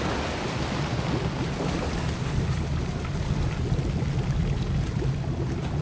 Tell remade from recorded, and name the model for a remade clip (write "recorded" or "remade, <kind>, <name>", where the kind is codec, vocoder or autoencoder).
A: recorded